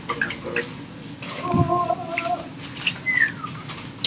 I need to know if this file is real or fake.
real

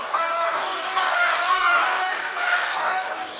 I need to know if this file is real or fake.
fake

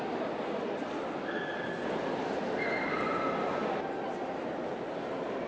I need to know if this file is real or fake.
real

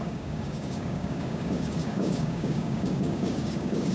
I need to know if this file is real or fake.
fake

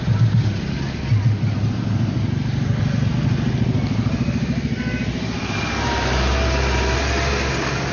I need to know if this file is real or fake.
real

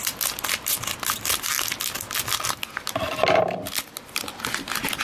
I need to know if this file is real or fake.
real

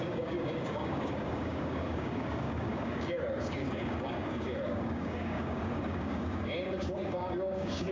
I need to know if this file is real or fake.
fake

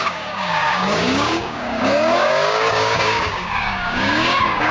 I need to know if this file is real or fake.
fake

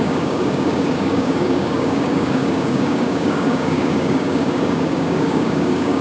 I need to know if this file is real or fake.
fake